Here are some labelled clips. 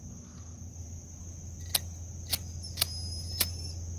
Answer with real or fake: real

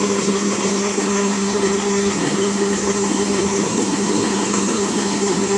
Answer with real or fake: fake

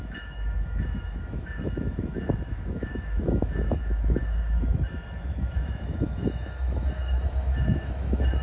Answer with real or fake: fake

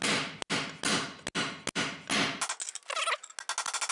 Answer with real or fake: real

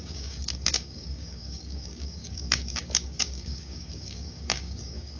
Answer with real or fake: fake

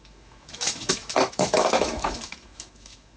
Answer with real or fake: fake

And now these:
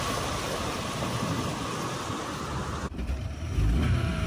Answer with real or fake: real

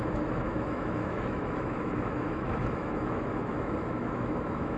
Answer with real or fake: fake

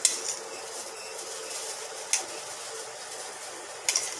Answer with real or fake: real